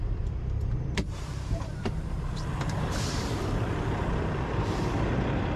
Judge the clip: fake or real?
fake